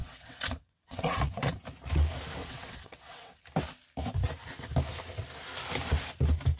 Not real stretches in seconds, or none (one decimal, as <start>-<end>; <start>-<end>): 0.0-1.6; 2.4-3.4